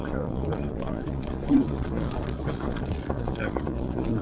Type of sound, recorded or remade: remade